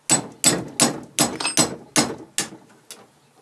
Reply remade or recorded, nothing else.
recorded